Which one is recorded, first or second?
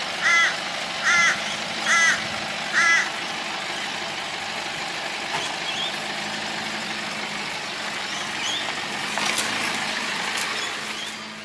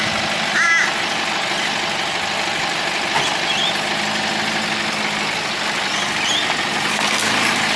first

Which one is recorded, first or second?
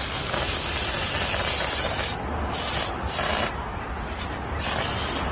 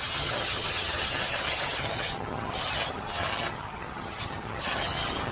first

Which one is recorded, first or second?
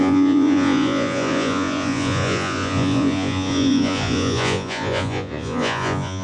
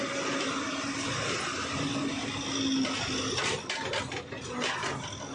second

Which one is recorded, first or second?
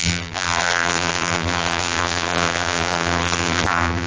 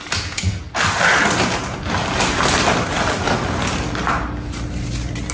second